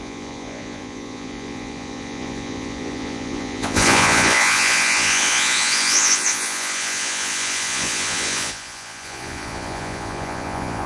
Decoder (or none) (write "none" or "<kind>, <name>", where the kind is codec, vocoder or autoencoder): vocoder, Vocos